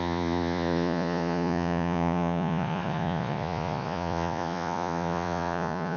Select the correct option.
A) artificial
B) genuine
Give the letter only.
A